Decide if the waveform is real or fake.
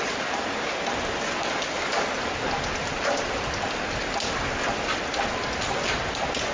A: real